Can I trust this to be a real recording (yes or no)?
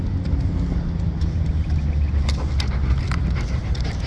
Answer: yes